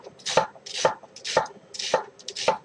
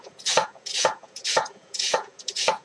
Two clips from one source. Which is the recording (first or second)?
first